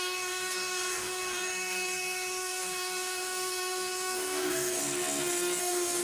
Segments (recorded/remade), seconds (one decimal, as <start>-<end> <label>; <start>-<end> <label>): 0.0-4.8 remade; 4.8-5.6 recorded; 5.6-6.0 remade